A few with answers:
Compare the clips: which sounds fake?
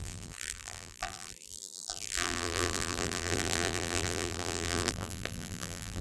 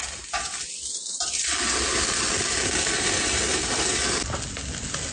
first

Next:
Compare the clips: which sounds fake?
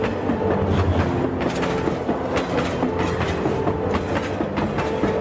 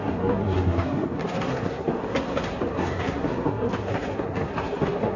second